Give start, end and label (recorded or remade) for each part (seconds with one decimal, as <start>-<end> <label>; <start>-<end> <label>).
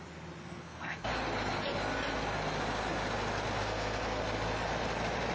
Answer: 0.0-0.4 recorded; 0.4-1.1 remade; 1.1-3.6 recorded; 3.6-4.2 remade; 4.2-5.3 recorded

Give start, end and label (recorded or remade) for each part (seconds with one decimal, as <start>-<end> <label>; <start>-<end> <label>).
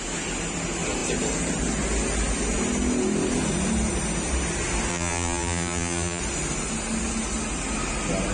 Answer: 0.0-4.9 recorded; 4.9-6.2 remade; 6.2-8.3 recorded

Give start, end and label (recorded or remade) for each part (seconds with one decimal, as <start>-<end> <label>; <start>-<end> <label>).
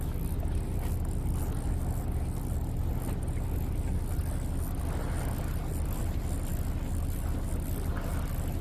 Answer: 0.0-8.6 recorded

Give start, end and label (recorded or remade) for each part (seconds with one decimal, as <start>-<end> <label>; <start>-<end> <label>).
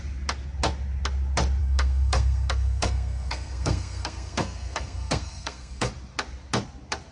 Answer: 0.0-1.6 recorded; 1.6-5.9 remade; 5.9-7.1 recorded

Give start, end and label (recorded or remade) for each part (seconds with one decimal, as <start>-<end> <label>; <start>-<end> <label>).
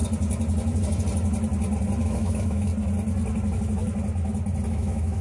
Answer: 0.0-2.0 recorded; 2.0-2.7 remade; 2.7-4.7 recorded; 4.7-5.2 remade